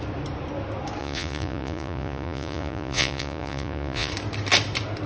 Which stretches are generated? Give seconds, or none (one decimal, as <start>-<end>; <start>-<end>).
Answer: 1.0-4.1